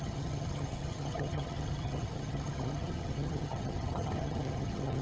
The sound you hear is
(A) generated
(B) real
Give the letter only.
A